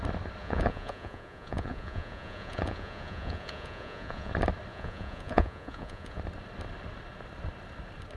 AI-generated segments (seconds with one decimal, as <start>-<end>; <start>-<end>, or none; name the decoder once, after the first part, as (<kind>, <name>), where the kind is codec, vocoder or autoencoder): 0.4-4.3 (vocoder, Vocos); 4.7-6.2